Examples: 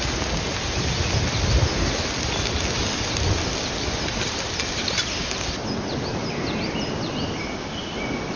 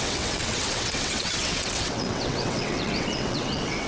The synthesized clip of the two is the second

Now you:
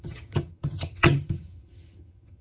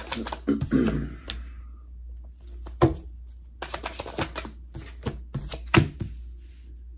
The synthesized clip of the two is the first